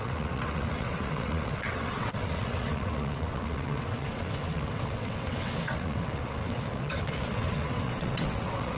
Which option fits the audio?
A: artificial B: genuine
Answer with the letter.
A